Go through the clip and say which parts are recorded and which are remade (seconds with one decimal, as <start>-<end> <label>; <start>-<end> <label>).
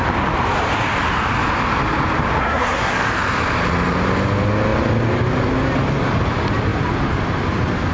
0.0-2.4 recorded; 2.4-2.9 remade; 2.9-7.9 recorded